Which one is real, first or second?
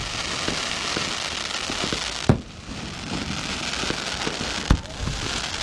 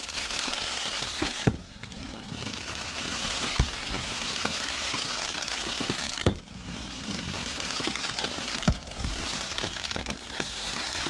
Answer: first